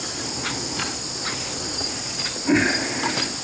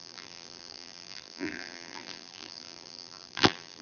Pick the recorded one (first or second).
first